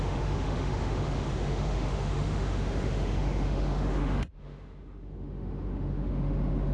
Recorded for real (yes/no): no